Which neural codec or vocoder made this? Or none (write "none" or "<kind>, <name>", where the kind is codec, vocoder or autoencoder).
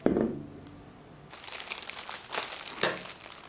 none